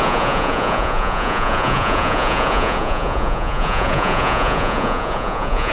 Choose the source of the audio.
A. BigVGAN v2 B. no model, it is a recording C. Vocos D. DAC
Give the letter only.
C